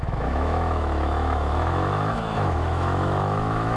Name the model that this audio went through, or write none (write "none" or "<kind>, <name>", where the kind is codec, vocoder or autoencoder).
autoencoder, DAC-VAE